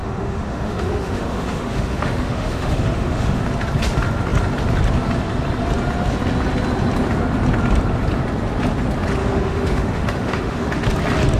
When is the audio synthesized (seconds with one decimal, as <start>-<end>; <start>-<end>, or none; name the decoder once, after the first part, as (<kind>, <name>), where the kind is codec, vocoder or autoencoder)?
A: 0.0-3.4 (autoencoder, DAC-VAE); 9.2-10.7